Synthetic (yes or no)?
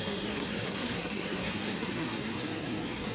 yes